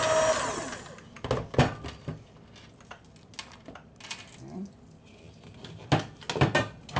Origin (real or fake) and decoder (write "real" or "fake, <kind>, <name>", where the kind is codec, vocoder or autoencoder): real